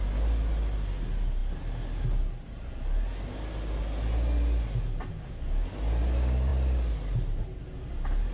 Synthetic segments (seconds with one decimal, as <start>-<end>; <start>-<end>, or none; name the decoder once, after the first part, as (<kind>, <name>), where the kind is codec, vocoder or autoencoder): none